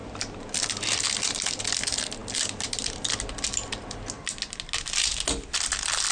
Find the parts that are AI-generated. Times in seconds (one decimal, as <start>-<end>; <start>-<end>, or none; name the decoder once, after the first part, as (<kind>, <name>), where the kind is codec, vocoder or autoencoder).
none